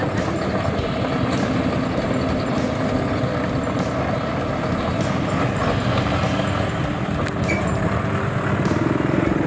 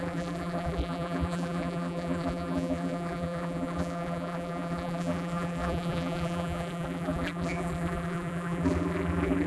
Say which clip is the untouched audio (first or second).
first